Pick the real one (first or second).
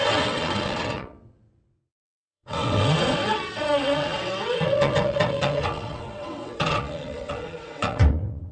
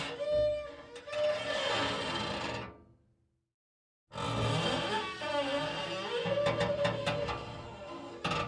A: second